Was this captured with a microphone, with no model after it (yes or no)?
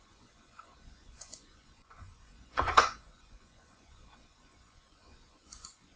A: no